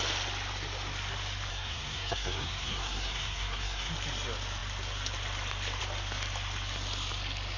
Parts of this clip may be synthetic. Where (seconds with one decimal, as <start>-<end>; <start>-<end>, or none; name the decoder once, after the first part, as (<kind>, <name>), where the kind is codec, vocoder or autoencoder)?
1.5-3.9 (codec, SNAC)